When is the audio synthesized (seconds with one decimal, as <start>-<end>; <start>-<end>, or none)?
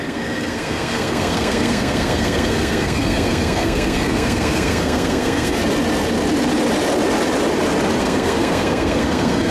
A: 0.0-5.6; 8.0-9.5